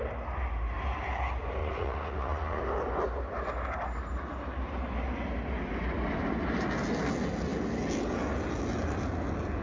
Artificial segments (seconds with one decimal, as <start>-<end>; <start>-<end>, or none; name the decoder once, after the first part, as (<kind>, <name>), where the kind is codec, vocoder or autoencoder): 1.6-2.6 (vocoder, Vocos)